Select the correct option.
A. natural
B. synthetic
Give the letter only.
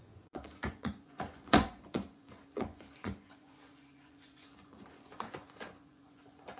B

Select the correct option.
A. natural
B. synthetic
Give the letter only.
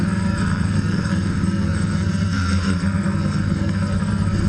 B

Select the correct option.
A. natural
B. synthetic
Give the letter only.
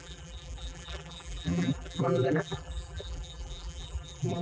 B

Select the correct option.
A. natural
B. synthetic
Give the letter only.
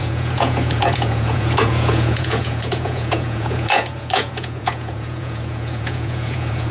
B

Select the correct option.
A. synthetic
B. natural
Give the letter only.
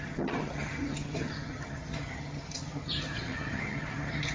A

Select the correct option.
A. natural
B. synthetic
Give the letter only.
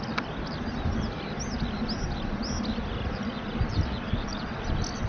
A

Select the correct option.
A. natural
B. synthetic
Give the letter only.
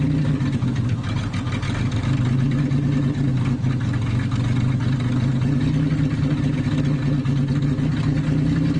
A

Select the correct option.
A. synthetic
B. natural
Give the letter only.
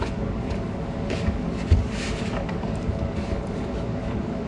A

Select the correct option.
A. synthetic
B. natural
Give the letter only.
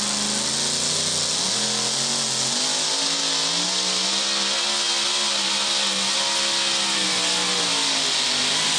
B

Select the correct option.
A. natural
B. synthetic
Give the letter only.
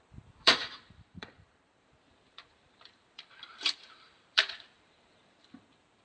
B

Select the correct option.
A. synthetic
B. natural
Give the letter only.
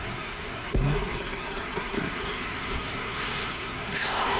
A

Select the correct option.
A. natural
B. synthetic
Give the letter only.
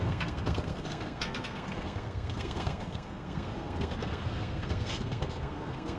B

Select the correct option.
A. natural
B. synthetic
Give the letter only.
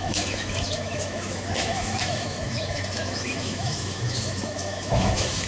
B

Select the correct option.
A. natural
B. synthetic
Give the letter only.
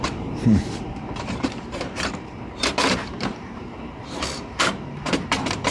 B